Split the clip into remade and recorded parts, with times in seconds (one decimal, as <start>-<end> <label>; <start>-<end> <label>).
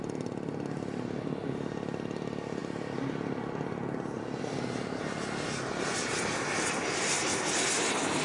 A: 0.0-8.2 recorded